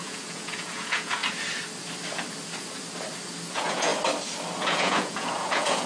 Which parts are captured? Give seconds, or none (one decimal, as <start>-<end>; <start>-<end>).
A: 1.2-3.5; 3.9-4.6